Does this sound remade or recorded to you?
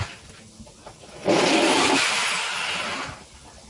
recorded